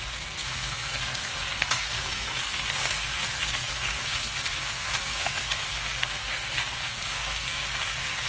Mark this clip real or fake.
fake